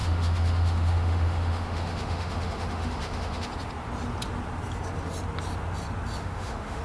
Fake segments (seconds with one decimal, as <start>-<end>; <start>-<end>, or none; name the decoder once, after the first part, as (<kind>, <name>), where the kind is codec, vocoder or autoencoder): 0.0-3.5 (autoencoder, DAC-VAE); 6.2-6.8